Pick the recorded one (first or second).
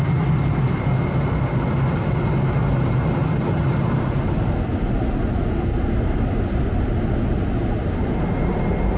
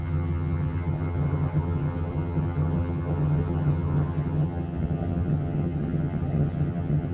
first